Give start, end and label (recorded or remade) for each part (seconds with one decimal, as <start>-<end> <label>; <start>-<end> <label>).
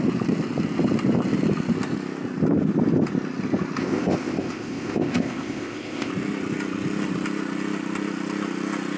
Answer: 0.0-3.8 recorded; 3.8-6.1 remade; 6.1-9.0 recorded